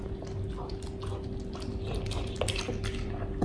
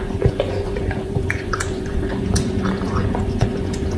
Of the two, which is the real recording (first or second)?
first